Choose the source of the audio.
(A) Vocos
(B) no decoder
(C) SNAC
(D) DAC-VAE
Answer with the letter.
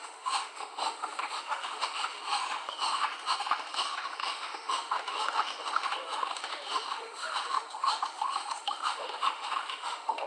D